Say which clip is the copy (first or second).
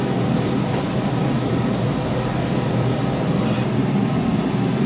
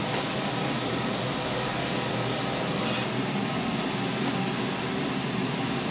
first